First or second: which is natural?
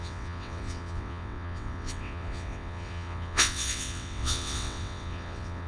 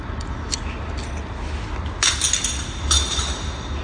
second